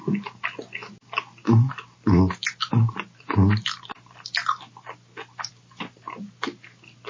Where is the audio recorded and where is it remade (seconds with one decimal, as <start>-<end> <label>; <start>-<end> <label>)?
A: 0.0-7.1 recorded